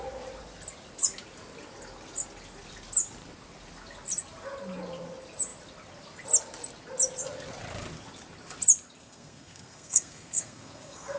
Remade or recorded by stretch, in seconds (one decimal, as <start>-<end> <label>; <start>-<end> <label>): 0.0-9.0 recorded; 9.0-11.2 remade